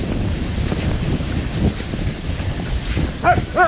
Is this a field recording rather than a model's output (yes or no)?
yes